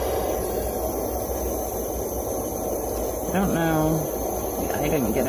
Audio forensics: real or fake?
real